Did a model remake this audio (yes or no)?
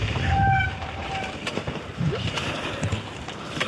yes